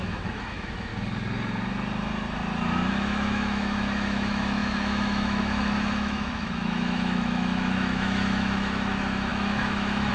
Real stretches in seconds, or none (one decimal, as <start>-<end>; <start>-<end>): 0.9-2.9